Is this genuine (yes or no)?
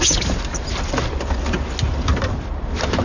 yes